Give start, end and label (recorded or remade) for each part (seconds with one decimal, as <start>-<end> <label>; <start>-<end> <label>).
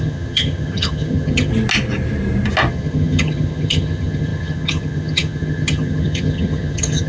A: 0.0-1.5 remade; 1.5-2.7 recorded; 2.7-7.1 remade